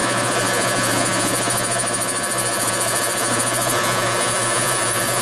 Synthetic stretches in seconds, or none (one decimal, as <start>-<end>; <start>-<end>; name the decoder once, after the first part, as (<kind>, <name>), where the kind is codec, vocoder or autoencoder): 0.0-5.2 (vocoder, Vocos)